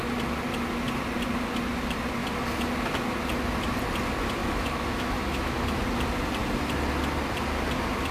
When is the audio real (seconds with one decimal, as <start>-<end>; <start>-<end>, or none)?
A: 0.0-4.4; 5.8-8.1